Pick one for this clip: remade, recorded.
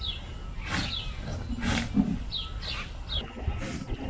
recorded